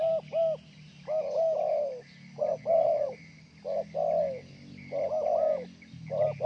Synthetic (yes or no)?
no